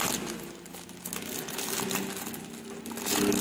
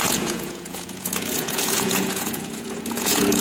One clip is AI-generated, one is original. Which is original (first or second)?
first